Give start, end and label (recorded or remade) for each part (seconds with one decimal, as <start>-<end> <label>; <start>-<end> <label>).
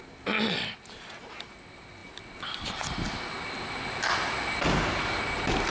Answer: 0.0-5.7 recorded